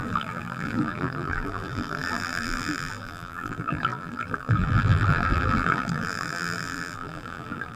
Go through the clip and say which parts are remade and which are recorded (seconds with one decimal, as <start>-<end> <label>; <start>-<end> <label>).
0.0-7.8 remade

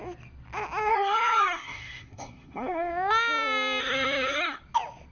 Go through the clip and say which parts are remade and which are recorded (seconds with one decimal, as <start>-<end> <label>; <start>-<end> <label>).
0.0-0.9 recorded; 0.9-2.9 remade; 2.9-3.8 recorded; 3.8-4.6 remade; 4.6-5.1 recorded

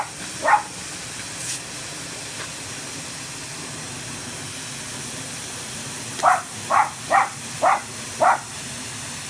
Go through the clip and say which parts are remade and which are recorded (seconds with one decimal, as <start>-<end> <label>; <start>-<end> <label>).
0.0-9.3 recorded

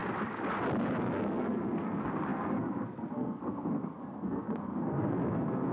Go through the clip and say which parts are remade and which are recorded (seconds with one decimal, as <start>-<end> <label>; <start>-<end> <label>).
0.0-1.0 recorded; 1.0-5.7 remade

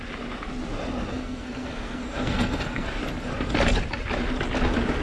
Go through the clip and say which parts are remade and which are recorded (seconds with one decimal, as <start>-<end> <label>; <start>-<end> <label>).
0.0-1.1 recorded; 1.1-3.0 remade; 3.0-5.0 recorded

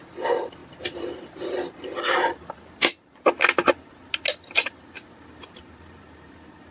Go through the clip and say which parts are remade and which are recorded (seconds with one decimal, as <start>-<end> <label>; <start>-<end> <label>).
0.0-6.7 recorded